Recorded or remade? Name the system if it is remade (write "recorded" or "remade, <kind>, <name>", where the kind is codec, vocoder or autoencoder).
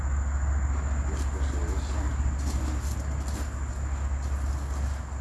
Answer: recorded